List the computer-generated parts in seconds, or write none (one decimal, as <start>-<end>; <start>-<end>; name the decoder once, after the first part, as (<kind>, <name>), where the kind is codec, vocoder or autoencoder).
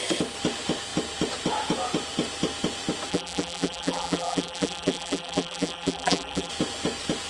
3.1-6.5 (vocoder, BigVGAN v2)